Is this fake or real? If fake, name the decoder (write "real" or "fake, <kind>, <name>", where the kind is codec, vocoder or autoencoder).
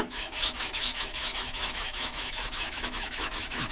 fake, autoencoder, DAC-VAE